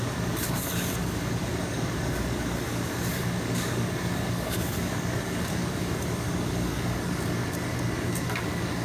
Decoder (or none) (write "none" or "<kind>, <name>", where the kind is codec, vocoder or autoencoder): codec, DAC